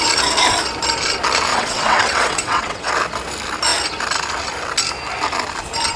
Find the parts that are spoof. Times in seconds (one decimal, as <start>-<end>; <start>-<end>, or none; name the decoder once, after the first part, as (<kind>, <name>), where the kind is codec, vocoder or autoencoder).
1.5-2.9 (vocoder, WaveNeXt)